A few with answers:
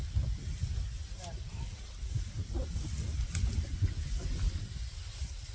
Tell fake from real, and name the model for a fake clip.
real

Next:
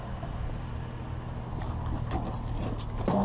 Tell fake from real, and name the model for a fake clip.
real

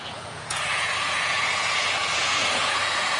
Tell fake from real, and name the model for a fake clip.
fake, vocoder, Vocos